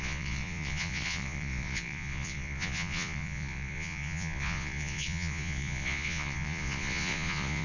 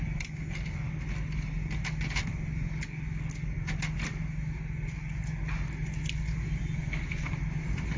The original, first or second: second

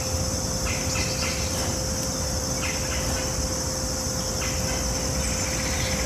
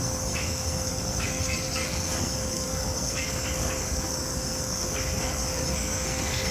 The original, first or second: first